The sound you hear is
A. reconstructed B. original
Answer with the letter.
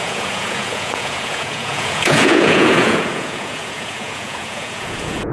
A